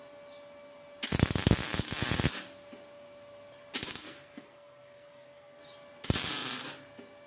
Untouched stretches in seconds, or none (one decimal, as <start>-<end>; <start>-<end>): 0.0-4.0; 5.6-7.3